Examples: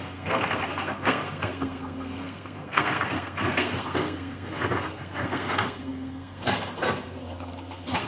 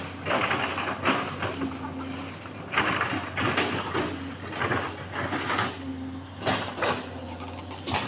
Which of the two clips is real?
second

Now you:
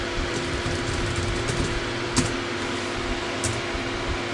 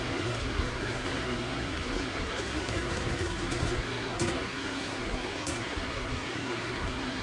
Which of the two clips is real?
first